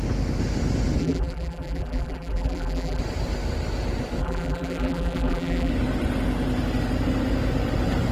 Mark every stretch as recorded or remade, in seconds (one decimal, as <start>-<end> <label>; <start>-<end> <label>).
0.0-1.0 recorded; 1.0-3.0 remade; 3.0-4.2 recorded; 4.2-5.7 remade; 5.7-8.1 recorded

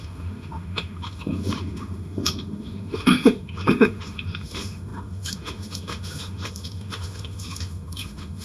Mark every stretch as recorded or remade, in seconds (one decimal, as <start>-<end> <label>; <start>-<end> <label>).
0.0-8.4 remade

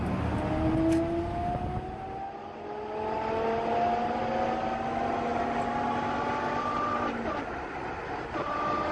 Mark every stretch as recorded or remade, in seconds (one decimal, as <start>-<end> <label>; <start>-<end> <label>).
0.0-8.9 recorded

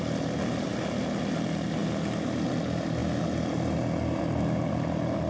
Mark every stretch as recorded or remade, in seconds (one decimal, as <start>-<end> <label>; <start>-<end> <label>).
0.0-5.3 recorded

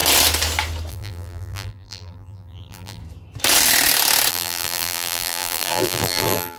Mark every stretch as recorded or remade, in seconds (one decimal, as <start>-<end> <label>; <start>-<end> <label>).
0.0-0.9 recorded; 0.9-3.0 remade; 3.0-4.3 recorded; 4.3-6.6 remade

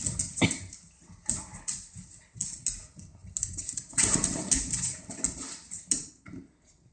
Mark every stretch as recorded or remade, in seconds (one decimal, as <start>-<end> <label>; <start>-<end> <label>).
0.0-6.9 recorded